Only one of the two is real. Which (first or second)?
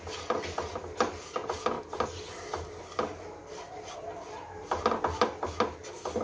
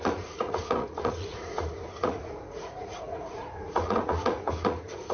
first